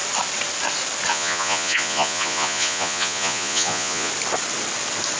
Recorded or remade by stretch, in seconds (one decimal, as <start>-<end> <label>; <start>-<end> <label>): 0.0-1.1 recorded; 1.1-4.1 remade; 4.1-5.2 recorded